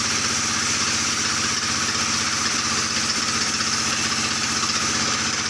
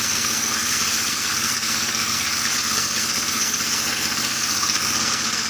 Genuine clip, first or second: first